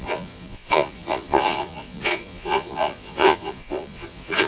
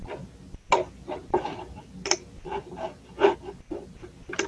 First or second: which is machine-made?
first